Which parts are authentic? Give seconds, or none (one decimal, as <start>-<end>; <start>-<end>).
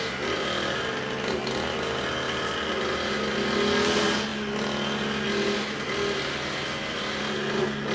0.0-7.9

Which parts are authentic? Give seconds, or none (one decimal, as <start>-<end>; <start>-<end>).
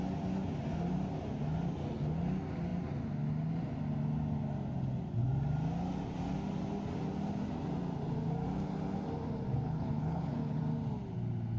0.0-9.5; 10.6-11.6